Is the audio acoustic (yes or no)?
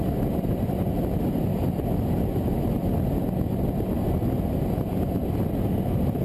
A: yes